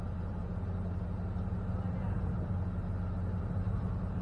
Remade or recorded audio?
recorded